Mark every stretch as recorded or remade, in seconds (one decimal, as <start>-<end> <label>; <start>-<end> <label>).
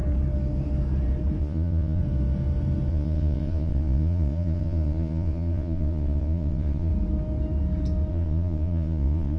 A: 0.0-1.4 recorded; 1.4-2.0 remade; 2.0-2.9 recorded; 2.9-6.9 remade; 6.9-8.1 recorded; 8.1-9.4 remade